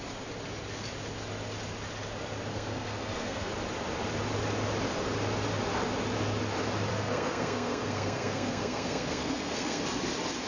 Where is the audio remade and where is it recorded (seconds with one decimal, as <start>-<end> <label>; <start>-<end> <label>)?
0.0-2.5 recorded; 2.5-3.5 remade; 3.5-6.9 recorded; 6.9-9.8 remade; 9.8-10.5 recorded